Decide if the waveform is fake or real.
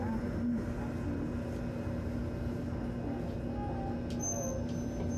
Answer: real